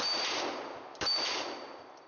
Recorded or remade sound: recorded